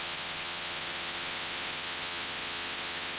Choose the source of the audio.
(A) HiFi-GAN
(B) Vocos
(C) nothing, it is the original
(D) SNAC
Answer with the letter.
A